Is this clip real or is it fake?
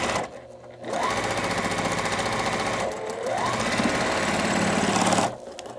real